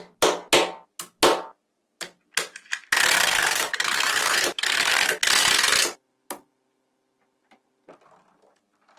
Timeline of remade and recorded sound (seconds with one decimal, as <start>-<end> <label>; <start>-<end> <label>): 0.0-3.3 recorded; 3.3-4.9 remade; 4.9-9.0 recorded